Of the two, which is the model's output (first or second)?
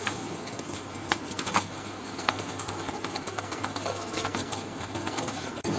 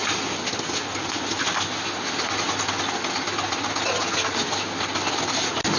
first